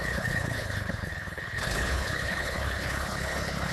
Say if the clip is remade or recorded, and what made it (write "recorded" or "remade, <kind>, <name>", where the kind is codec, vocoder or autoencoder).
remade, codec, HILCodec